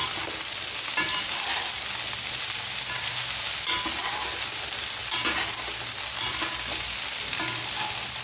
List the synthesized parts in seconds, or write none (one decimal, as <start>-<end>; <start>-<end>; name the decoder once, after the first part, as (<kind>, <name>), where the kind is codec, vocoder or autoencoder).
none